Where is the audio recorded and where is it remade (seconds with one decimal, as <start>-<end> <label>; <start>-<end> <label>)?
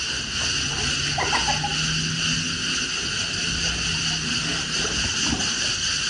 0.0-6.1 recorded